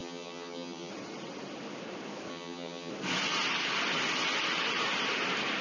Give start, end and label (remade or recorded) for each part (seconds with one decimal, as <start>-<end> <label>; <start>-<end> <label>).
0.0-0.9 remade; 0.9-2.3 recorded; 2.3-2.9 remade; 2.9-5.6 recorded